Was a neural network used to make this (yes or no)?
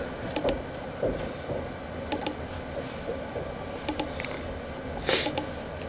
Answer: no